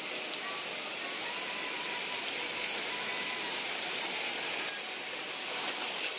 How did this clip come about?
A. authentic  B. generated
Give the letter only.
A